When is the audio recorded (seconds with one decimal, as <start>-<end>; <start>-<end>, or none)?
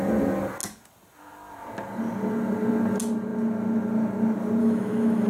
0.0-4.6